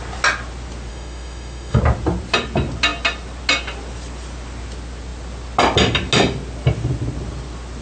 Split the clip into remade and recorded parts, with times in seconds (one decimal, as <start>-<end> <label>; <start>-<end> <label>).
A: 0.0-0.9 recorded; 0.9-1.8 remade; 1.8-7.8 recorded